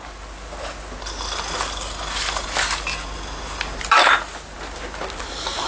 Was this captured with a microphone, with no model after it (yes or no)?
yes